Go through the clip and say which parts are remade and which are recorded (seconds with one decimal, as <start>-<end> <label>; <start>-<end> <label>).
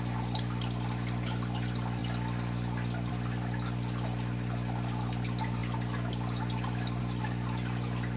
0.0-8.2 recorded